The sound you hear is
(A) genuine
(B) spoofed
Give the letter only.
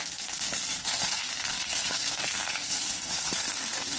B